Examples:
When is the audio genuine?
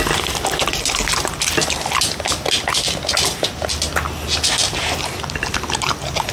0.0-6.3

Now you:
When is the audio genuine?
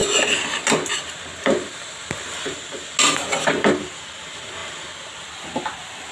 0.0-6.1